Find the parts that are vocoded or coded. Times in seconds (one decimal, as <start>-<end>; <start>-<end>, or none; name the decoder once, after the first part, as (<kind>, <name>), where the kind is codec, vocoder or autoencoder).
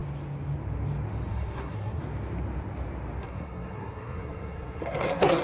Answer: 1.3-2.0 (codec, SNAC); 3.2-5.4